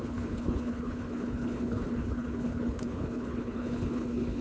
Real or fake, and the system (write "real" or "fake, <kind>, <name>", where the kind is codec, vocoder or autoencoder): fake, codec, HILCodec